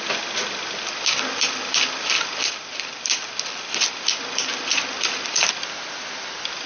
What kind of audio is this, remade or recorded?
recorded